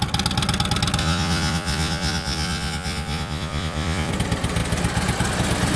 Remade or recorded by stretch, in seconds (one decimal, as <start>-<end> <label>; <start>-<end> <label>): 0.0-1.0 recorded; 1.0-4.1 remade; 4.1-5.8 recorded